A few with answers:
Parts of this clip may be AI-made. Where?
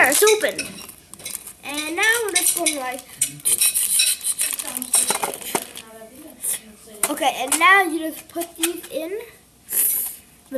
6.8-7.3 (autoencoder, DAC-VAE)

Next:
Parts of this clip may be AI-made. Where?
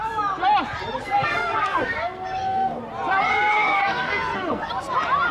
1.0-2.8 (codec, SNAC); 3.3-4.7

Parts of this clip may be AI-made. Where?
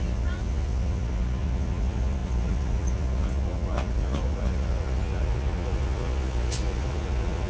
0.0-7.5 (vocoder, Vocos)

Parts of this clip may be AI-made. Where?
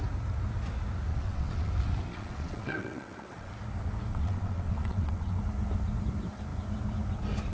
1.1-1.7 (vocoder, WaveNeXt); 2.1-3.5; 4.1-5.4